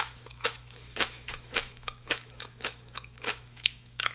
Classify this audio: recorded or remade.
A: remade